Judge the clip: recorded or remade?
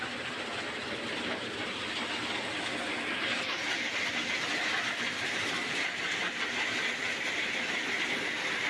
recorded